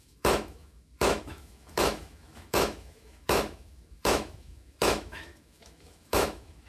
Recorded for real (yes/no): no